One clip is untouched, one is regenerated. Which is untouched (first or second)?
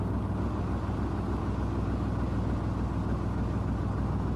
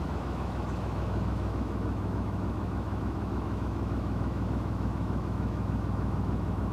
first